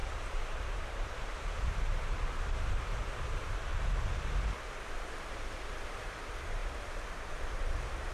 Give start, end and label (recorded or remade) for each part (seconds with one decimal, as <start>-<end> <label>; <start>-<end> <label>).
0.0-3.7 remade; 3.7-5.0 recorded; 5.0-8.1 remade